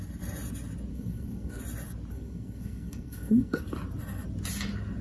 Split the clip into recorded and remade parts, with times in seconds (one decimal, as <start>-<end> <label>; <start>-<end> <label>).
0.0-0.9 recorded; 0.9-1.6 remade; 1.6-2.1 recorded; 2.1-3.6 remade; 3.6-5.0 recorded